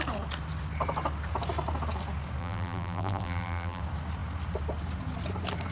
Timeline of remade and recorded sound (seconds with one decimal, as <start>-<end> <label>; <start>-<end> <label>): 0.0-2.4 recorded; 2.4-3.8 remade; 3.8-5.7 recorded